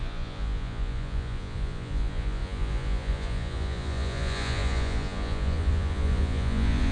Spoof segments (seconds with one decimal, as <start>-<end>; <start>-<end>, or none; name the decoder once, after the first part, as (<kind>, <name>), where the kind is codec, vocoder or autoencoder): 0.0-6.9 (vocoder, Vocos)